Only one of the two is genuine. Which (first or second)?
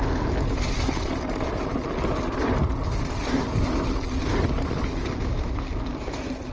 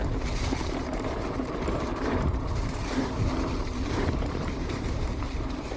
first